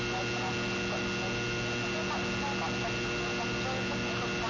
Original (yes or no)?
yes